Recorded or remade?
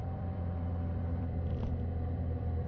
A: remade